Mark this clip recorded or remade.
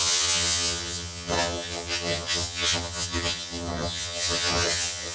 remade